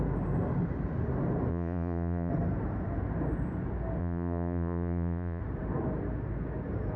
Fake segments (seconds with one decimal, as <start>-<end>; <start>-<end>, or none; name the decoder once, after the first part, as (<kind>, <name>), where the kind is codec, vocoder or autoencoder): 1.5-2.3 (vocoder, Vocos); 4.0-5.4